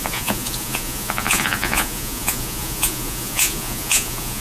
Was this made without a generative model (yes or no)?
no